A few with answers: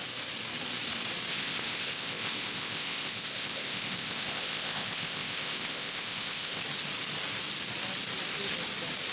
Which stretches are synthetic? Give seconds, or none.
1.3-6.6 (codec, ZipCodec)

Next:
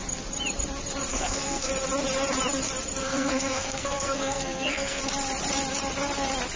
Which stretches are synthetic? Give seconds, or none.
1.1-1.7 (codec, SNAC); 3.0-5.0

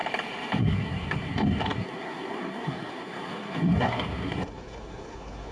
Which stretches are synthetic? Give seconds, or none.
0.6-5.5 (codec, SNAC)

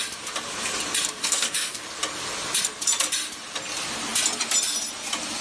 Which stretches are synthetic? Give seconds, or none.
1.2-1.8 (codec, SNAC)

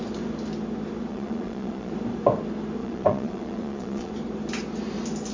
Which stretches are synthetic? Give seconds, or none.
1.1-1.9 (vocoder, Vocos); 2.8-4.1

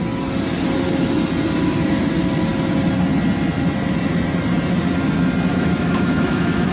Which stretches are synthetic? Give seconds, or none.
5.5-6.7 (autoencoder, DAC-VAE)

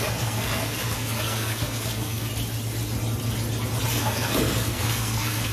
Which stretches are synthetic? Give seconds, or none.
0.0-2.3 (codec, SNAC); 3.9-5.5

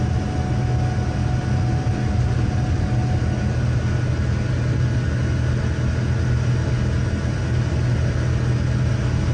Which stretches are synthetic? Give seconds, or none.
1.2-2.3 (vocoder, BigVGAN v2)